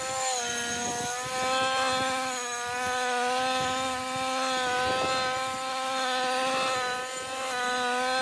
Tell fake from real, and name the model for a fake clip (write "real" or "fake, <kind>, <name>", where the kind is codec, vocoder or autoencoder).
real